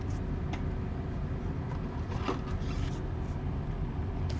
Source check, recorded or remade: recorded